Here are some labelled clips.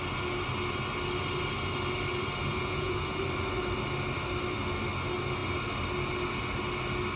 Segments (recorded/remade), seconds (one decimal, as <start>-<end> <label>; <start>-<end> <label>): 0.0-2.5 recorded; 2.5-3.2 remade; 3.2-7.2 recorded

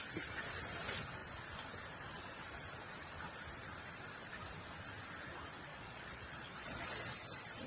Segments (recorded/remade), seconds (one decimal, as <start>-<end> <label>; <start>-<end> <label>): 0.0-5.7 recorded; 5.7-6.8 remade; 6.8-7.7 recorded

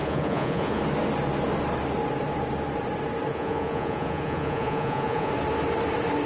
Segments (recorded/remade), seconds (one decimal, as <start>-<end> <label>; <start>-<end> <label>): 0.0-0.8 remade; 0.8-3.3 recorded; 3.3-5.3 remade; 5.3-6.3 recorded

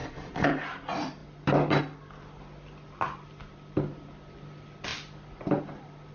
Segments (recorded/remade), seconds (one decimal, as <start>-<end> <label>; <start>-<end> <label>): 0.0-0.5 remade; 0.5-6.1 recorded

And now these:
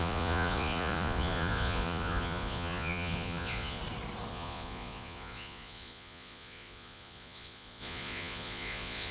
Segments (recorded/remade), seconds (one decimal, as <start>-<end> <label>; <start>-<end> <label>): 0.0-3.8 remade; 3.8-4.3 recorded; 4.3-9.1 remade

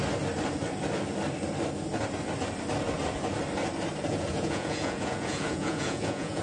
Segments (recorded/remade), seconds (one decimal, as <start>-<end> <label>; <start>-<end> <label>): 0.0-4.1 recorded; 4.1-6.4 remade

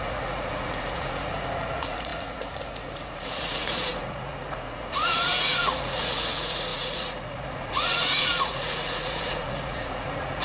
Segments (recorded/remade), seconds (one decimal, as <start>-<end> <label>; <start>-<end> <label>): 0.0-10.4 remade

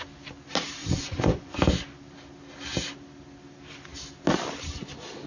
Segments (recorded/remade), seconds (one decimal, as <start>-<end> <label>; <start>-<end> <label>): 0.0-0.8 recorded; 0.8-1.5 remade; 1.5-5.3 recorded